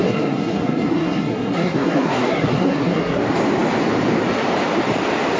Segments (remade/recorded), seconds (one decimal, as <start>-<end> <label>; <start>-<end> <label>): 0.0-3.2 remade; 3.2-5.4 recorded